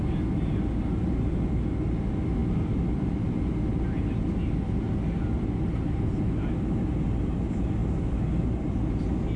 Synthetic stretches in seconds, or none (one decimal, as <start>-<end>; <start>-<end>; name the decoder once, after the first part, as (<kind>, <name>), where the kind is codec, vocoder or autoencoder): none